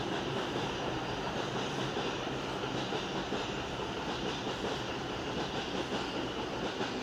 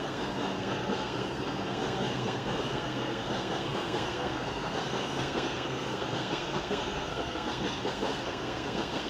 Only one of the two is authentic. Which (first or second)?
first